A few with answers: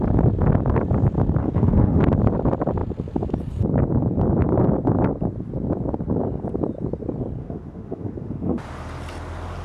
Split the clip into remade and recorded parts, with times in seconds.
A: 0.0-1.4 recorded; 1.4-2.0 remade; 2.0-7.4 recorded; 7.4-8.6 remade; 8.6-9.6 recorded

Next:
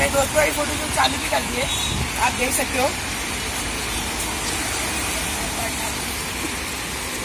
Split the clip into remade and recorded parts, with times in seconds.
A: 0.0-1.2 recorded; 1.2-1.7 remade; 1.7-7.2 recorded

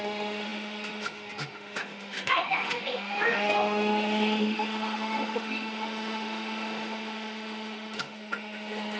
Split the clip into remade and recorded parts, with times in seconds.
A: 0.0-9.0 remade

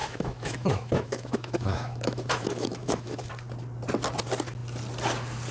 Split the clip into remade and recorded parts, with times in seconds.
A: 0.0-3.3 remade; 3.3-5.5 recorded

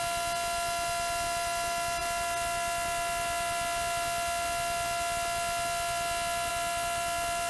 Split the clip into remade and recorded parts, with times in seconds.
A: 0.0-7.5 recorded

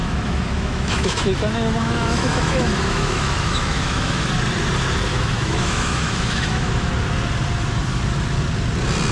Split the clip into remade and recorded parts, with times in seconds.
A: 0.0-4.3 remade; 4.3-5.1 recorded; 5.1-6.9 remade; 6.9-9.1 recorded

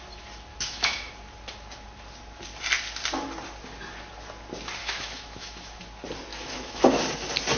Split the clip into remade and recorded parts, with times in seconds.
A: 0.0-0.5 recorded; 0.5-1.1 remade; 1.1-4.8 recorded; 4.8-5.8 remade; 5.8-6.3 recorded; 6.3-6.8 remade; 6.8-7.6 recorded